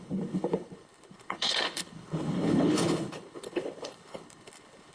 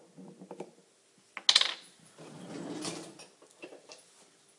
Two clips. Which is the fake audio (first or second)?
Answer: first